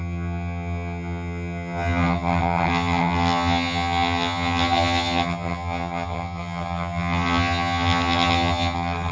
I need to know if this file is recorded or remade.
remade